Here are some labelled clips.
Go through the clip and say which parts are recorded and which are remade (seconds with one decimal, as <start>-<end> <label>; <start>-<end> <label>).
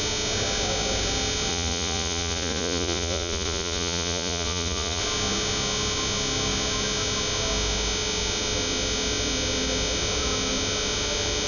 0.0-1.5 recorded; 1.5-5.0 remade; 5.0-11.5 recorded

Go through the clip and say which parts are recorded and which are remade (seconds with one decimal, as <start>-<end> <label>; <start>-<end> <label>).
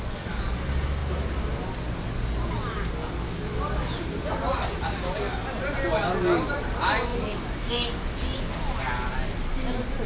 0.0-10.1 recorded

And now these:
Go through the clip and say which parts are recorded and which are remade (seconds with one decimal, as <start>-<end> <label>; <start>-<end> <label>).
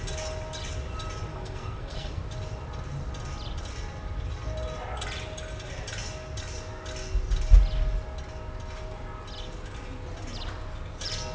0.0-1.3 recorded; 1.3-2.2 remade; 2.2-11.3 recorded